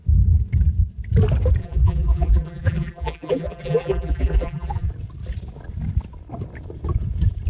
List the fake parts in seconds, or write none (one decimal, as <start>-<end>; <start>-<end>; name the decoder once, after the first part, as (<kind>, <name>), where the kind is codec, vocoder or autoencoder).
1.6-4.9 (vocoder, BigVGAN v2)